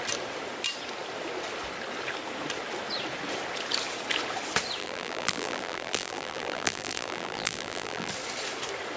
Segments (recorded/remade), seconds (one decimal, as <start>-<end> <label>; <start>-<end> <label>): 0.0-4.8 recorded; 4.8-8.1 remade; 8.1-9.0 recorded